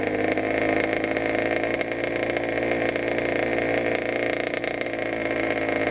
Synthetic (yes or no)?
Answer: no